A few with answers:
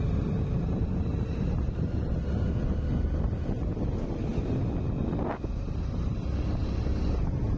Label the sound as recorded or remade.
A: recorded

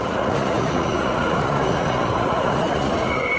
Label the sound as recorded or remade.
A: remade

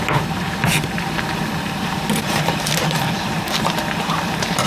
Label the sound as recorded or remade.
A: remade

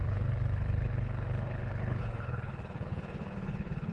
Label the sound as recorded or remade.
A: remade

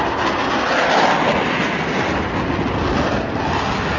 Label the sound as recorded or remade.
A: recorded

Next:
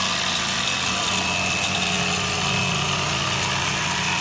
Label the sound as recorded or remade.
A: recorded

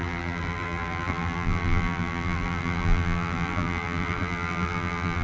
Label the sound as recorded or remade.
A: remade